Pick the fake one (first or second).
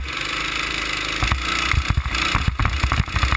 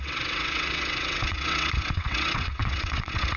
second